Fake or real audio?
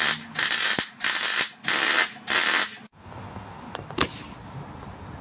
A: real